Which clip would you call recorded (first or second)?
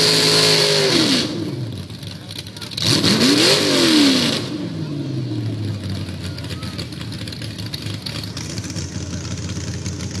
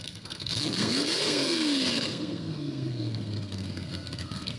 first